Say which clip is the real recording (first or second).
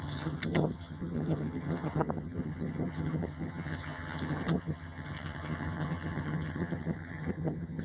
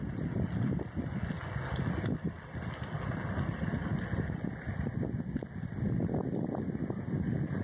second